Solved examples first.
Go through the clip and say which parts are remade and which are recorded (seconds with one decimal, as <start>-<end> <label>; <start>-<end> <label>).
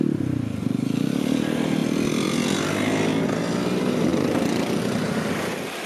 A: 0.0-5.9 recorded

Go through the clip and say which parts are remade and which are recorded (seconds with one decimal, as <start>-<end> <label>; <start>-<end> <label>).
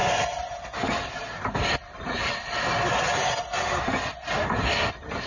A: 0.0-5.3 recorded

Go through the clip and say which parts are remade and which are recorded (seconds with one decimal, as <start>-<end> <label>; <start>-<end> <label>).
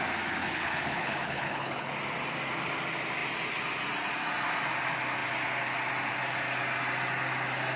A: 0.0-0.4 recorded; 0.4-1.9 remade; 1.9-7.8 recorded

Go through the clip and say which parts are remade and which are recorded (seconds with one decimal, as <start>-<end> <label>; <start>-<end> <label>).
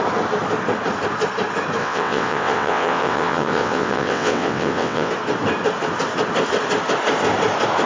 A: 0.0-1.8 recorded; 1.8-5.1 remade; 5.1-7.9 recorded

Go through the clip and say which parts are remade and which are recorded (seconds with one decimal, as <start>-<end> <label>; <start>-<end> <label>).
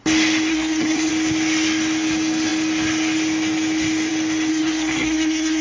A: 0.0-0.5 recorded; 0.5-1.1 remade; 1.1-4.5 recorded; 4.5-5.6 remade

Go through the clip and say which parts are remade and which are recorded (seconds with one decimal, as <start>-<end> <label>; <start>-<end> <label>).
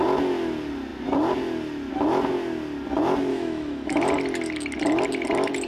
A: 0.0-3.3 recorded; 3.3-4.0 remade; 4.0-5.7 recorded